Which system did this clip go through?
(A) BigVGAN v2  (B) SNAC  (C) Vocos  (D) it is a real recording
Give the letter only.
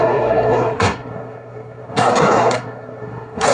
B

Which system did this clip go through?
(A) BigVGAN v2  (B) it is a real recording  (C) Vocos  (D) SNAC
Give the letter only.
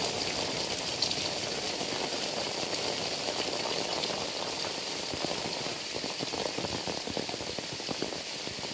B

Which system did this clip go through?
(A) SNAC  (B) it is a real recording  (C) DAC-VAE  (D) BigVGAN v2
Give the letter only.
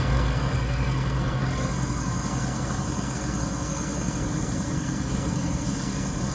A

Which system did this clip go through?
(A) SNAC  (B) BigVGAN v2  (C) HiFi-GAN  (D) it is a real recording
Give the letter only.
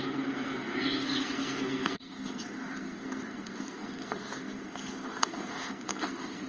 A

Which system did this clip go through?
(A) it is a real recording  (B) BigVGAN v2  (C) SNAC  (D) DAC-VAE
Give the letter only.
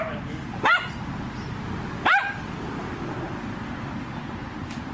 A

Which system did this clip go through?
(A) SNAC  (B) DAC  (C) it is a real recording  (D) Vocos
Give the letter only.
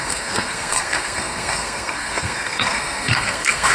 A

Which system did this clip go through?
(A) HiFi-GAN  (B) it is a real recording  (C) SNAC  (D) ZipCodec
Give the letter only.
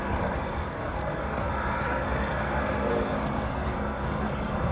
C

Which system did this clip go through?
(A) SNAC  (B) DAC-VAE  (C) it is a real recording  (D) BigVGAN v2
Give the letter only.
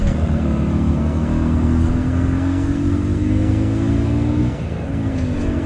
A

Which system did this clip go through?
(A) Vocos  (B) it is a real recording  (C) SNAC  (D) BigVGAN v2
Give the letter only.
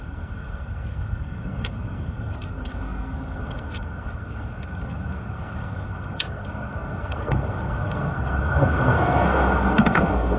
C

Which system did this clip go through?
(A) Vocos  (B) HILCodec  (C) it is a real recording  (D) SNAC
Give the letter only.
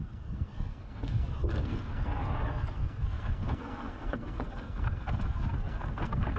D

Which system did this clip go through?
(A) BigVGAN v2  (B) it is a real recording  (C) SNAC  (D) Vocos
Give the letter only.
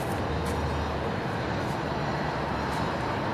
B